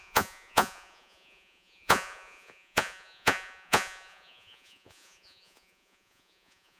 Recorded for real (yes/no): no